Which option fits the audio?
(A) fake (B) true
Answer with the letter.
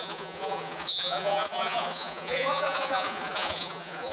A